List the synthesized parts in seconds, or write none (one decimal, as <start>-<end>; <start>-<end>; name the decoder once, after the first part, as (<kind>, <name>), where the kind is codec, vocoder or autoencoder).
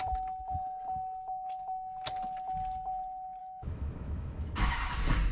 3.4-4.7 (autoencoder, DAC-VAE)